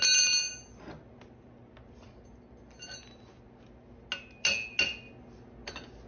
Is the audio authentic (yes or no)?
yes